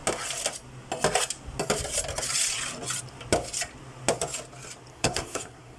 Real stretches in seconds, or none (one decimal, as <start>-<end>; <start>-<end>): 0.0-4.9